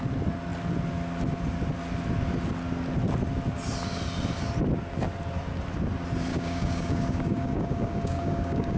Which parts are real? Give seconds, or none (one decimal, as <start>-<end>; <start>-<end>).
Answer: 0.0-6.3